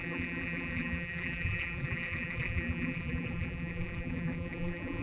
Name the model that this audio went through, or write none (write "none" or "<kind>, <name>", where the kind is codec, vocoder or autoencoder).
vocoder, BigVGAN v2